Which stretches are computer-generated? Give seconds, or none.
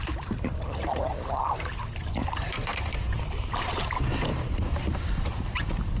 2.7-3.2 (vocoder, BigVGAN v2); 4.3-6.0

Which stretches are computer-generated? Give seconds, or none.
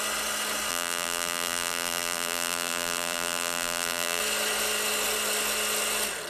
0.7-4.2 (vocoder, BigVGAN v2)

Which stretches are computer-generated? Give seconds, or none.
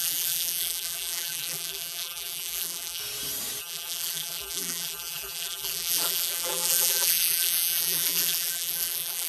0.0-3.0 (vocoder, BigVGAN v2); 3.6-9.3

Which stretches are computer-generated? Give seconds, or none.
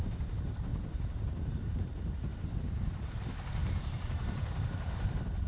0.7-1.5 (vocoder, BigVGAN v2); 3.6-4.6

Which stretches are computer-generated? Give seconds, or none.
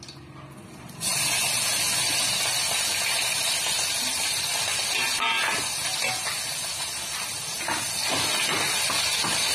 none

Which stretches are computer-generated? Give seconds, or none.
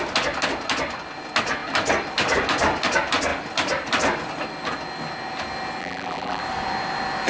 5.8-6.4 (vocoder, BigVGAN v2)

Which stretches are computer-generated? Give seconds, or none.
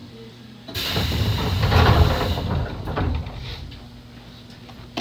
0.0-2.8 (vocoder, BigVGAN v2)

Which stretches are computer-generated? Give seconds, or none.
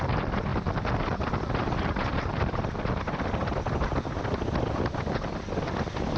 0.5-4.2 (vocoder, BigVGAN v2)